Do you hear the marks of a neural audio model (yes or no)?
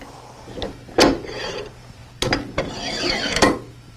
no